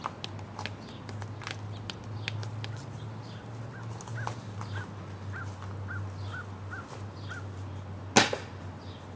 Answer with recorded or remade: recorded